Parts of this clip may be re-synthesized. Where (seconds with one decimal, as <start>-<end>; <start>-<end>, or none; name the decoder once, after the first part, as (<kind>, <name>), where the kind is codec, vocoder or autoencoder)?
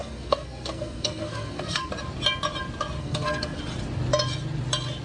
0.0-1.9 (codec, SNAC); 3.0-3.6